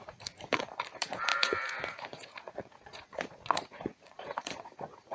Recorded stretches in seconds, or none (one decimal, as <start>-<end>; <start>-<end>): none